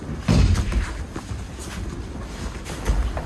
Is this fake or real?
real